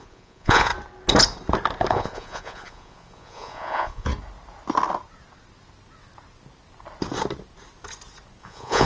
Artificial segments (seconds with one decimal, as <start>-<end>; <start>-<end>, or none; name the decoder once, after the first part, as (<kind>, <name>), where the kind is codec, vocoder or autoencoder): 0.0-0.7 (vocoder, Vocos); 1.9-4.1; 8.4-8.9